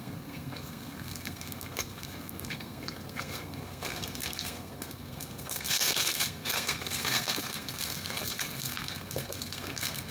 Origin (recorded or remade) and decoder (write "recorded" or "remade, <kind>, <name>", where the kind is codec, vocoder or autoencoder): remade, codec, SNAC